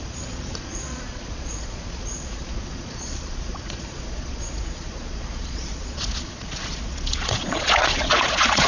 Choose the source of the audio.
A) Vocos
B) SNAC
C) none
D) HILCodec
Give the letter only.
A